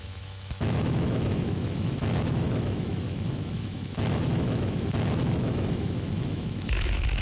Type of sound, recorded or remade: remade